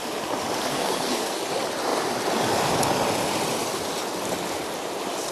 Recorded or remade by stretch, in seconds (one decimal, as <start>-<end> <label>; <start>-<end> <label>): 0.0-0.7 recorded; 0.7-1.4 remade; 1.4-5.3 recorded